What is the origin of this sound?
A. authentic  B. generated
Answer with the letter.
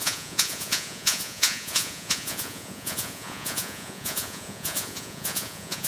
B